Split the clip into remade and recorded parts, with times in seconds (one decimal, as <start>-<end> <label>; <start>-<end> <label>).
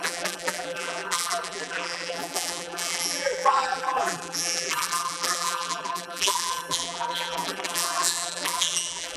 0.0-9.2 remade